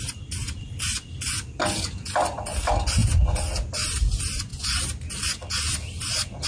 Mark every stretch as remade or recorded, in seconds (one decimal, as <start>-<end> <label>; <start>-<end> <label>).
0.0-6.5 recorded